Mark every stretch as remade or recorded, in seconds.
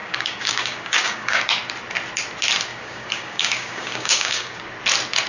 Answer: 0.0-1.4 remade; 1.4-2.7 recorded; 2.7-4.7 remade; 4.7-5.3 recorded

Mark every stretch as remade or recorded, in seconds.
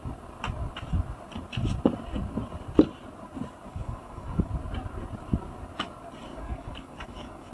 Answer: 0.0-3.7 recorded; 3.7-4.5 remade; 4.5-6.3 recorded; 6.3-7.5 remade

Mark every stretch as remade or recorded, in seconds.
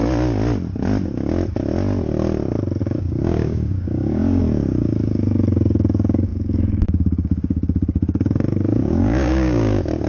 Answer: 0.0-2.8 recorded; 2.8-10.1 remade